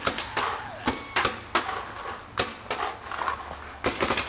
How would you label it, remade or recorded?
recorded